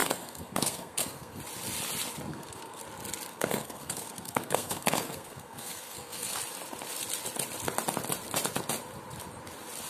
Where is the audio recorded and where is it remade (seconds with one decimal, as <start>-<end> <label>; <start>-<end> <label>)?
0.0-1.4 remade; 1.4-2.3 recorded; 2.3-2.8 remade; 2.8-3.3 recorded; 3.3-6.4 remade; 6.4-9.9 recorded